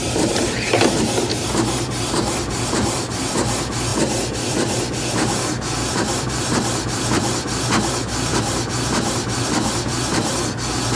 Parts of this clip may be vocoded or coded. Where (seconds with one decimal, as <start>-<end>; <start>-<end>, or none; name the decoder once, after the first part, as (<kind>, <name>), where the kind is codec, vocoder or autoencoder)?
0.0-10.1 (vocoder, BigVGAN v2)